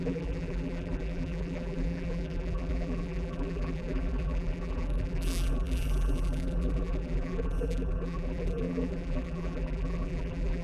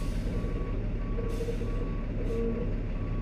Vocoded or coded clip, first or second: first